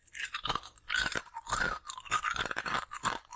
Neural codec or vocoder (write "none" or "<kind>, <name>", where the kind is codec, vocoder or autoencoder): none